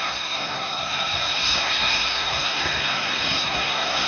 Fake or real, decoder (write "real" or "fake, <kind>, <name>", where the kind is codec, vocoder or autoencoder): fake, codec, SNAC